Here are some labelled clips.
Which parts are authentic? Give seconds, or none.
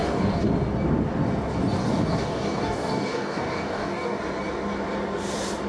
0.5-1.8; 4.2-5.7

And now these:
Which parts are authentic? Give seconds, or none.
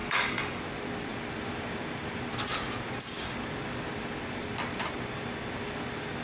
0.6-6.2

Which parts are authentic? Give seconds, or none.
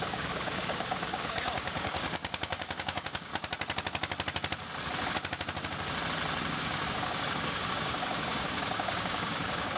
3.3-6.6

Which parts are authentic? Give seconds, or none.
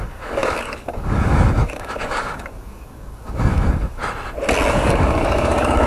4.0-4.7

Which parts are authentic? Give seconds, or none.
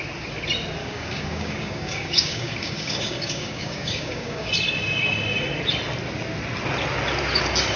0.0-0.8; 4.5-7.8